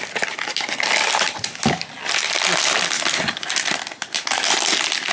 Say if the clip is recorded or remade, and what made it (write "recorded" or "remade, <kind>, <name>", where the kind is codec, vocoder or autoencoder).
recorded